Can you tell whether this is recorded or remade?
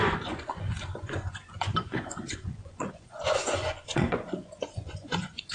remade